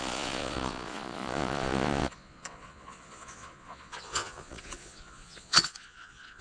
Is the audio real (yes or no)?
no